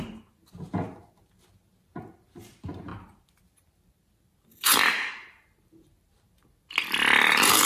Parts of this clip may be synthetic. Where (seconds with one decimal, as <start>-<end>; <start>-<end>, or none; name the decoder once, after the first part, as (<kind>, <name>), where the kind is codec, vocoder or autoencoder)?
none